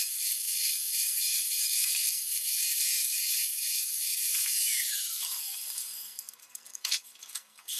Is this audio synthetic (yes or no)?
yes